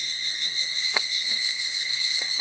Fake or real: fake